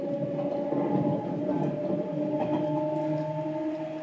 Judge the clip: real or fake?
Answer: real